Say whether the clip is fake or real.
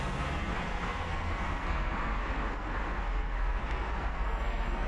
fake